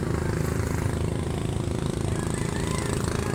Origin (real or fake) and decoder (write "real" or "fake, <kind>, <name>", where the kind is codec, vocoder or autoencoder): real